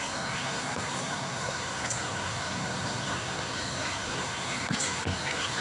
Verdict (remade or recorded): remade